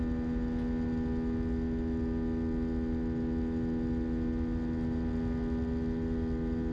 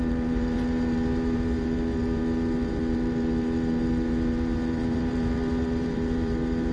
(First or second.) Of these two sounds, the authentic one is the first